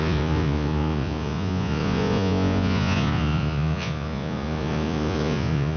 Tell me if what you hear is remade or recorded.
remade